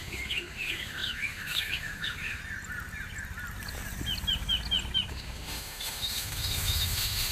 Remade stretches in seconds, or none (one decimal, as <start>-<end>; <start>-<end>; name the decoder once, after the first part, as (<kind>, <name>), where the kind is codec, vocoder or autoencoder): 0.0-2.4 (autoencoder, DAC-VAE); 5.1-7.3

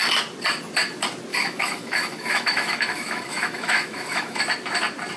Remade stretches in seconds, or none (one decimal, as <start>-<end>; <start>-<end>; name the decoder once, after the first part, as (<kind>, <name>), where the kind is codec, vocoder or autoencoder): 1.3-4.4 (autoencoder, DAC-VAE)

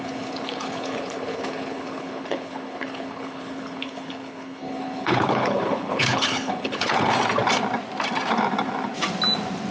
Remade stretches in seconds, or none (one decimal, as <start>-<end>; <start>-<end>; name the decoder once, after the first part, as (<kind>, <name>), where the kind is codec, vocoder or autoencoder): 0.0-7.1 (codec, HILCodec)